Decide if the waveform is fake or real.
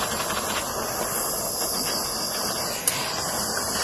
real